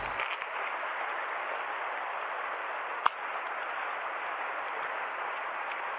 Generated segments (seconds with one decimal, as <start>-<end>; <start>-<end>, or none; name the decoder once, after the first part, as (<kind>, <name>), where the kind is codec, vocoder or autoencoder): 1.2-2.5 (vocoder, BigVGAN v2)

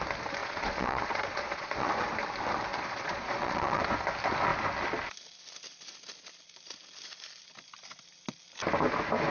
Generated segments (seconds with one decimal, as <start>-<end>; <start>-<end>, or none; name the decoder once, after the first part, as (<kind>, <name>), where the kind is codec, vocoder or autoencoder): 0.4-1.9 (vocoder, Vocos); 2.7-3.8

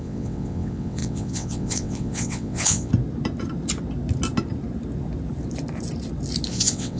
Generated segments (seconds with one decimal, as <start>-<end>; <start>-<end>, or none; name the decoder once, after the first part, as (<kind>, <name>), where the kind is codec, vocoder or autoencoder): 0.0-2.9 (vocoder, WaveNeXt); 6.5-7.0

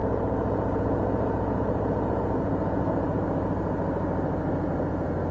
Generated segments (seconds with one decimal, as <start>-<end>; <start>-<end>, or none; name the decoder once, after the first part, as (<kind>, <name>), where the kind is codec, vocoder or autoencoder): 0.0-3.2 (vocoder, Vocos)

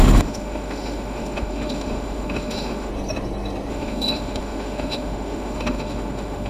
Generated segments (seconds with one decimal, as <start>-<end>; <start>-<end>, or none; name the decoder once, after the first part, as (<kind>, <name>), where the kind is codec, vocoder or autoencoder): 0.0-2.9 (autoencoder, DAC-VAE); 3.7-6.5